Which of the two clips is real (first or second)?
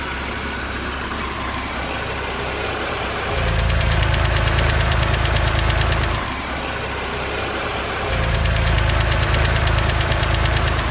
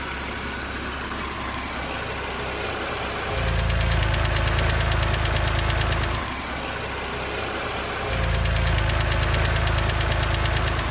second